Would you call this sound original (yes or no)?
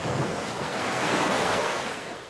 no